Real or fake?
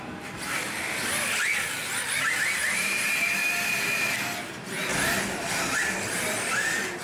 real